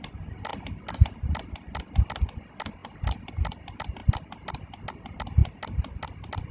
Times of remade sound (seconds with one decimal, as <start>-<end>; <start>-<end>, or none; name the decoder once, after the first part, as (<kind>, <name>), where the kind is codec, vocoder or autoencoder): none